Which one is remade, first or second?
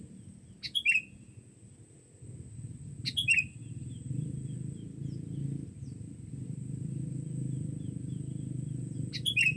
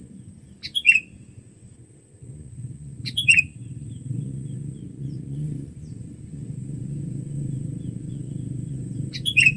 second